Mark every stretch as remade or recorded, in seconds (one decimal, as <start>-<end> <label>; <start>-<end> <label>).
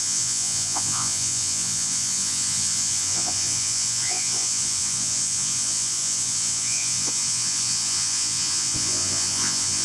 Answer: 0.0-9.8 remade